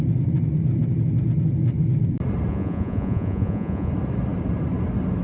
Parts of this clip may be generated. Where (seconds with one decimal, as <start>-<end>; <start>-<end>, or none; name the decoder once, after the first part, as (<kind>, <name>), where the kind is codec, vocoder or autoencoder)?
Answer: 2.5-3.9 (vocoder, Vocos)